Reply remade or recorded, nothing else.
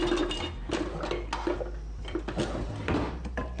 recorded